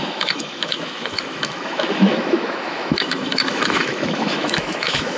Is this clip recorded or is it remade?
remade